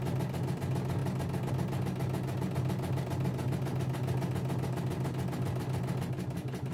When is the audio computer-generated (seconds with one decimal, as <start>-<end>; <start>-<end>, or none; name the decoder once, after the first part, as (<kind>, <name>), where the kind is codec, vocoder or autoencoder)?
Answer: none

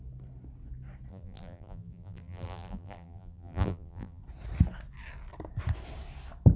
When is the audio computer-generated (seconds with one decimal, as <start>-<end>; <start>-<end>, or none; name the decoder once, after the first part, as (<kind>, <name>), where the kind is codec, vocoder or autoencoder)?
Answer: 1.1-4.2 (vocoder, BigVGAN v2)

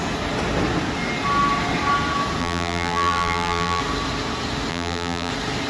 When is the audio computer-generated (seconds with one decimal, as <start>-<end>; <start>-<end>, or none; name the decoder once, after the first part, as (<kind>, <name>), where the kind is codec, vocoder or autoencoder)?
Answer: 2.4-3.8 (vocoder, BigVGAN v2); 4.7-5.3

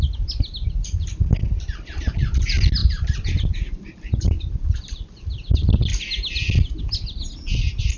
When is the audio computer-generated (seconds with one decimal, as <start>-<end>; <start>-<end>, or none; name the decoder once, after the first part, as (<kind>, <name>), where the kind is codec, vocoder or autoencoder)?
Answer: 2.8-5.1 (vocoder, BigVGAN v2)